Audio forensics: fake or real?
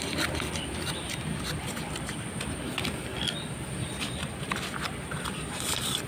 real